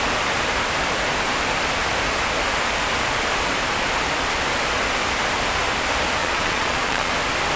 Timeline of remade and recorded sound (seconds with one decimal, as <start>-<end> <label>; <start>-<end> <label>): 0.0-6.2 recorded; 6.2-7.1 remade; 7.1-7.6 recorded